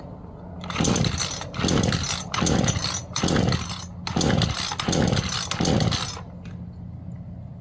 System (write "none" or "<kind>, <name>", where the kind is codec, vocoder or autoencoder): none